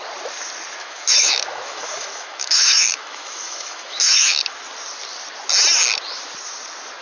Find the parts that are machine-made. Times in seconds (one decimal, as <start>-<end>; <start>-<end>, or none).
0.8-4.4